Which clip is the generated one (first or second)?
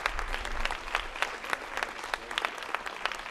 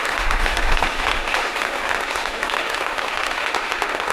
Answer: second